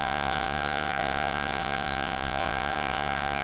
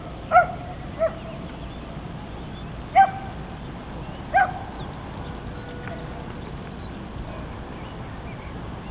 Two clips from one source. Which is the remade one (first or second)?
first